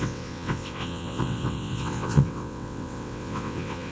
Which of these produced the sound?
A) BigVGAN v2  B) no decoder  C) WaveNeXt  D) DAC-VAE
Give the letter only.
C